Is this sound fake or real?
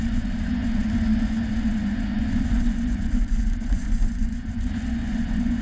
fake